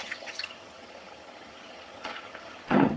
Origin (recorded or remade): remade